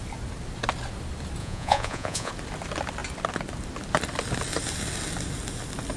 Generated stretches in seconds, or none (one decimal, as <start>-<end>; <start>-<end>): 1.4-2.3